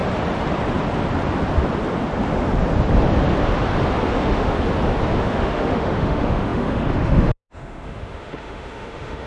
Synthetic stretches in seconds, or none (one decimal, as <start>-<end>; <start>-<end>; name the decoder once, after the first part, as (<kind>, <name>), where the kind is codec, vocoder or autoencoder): 4.1-4.5 (autoencoder, DAC-VAE); 5.2-9.3